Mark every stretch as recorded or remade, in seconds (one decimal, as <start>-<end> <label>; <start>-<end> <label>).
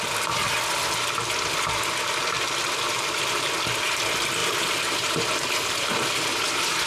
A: 0.0-6.9 recorded